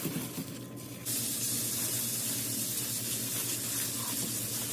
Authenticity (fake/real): real